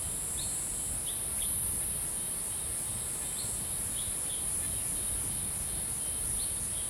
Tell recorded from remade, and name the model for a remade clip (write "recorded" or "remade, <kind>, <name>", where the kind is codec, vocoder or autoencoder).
recorded